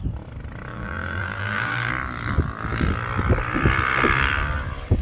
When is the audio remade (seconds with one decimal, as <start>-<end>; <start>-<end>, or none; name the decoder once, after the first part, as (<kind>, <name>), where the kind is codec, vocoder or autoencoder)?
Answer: 0.7-1.9 (vocoder, BigVGAN v2)